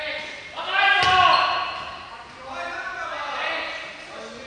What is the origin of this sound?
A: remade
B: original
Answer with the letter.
B